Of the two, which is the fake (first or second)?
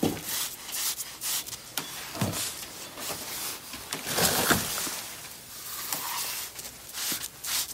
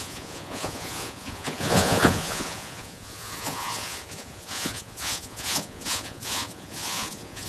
second